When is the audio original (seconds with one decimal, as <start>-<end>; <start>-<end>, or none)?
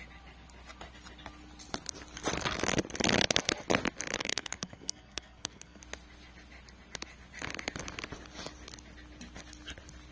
0.0-4.2; 5.8-10.1